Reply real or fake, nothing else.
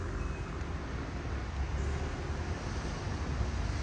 real